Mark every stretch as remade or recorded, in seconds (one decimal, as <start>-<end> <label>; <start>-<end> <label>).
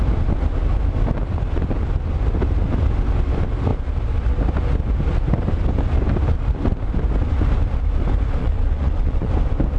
0.0-8.4 recorded; 8.4-9.3 remade; 9.3-9.8 recorded